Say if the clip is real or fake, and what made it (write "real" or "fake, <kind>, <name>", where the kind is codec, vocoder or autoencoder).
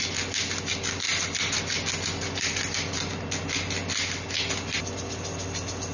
real